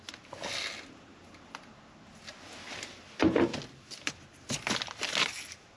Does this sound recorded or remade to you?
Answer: recorded